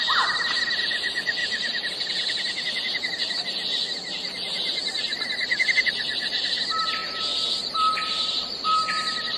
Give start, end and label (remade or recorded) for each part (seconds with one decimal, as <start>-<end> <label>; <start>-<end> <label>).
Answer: 0.0-1.4 recorded; 1.4-1.9 remade; 1.9-9.4 recorded